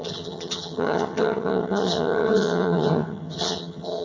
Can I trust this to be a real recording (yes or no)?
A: no